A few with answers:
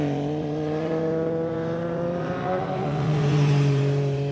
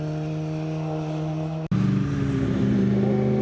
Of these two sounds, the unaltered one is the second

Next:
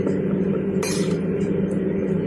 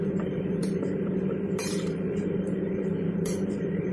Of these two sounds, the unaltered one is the first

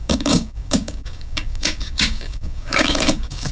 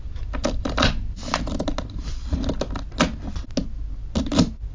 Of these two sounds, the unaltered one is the second